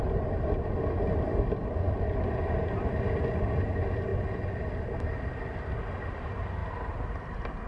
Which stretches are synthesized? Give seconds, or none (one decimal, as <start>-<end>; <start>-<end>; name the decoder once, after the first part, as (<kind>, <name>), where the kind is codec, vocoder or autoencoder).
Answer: none